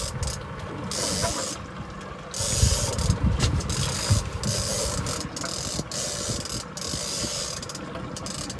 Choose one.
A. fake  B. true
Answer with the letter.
B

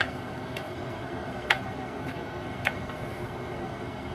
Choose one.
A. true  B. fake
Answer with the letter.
B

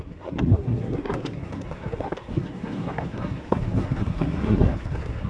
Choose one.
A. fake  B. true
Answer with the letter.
A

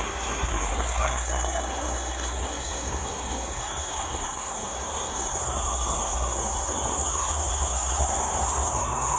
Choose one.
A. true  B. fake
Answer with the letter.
B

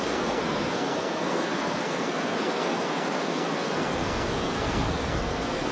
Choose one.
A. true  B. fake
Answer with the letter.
B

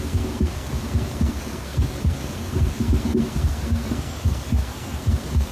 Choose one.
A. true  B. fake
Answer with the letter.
B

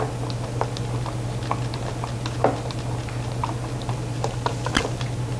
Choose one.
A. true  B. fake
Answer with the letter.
A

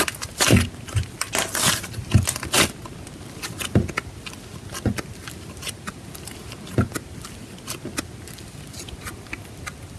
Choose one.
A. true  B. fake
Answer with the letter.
A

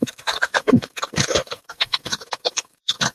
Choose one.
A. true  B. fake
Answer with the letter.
B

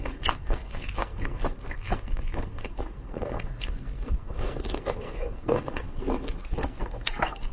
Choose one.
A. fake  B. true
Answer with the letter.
A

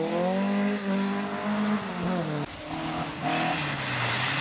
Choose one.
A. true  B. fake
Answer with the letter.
A